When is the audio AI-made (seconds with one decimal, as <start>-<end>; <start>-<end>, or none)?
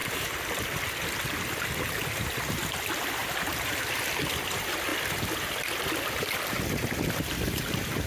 0.0-3.2; 4.0-8.1